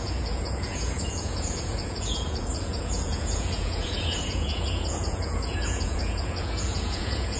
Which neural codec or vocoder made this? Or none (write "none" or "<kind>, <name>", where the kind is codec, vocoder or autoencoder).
vocoder, Vocos